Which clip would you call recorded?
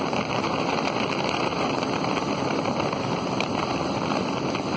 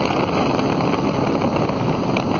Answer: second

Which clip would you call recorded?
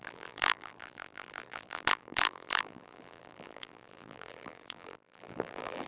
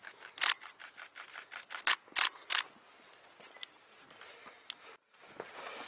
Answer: second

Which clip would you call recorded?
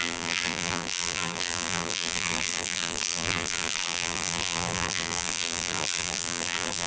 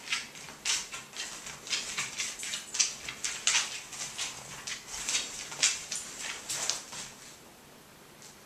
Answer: second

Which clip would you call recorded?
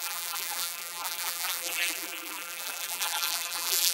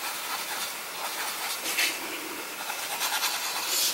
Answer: second